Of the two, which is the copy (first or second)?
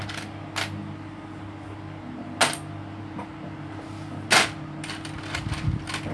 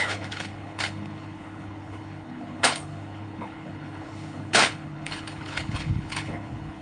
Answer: second